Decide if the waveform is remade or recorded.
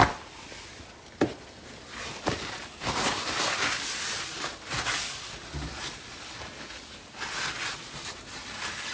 recorded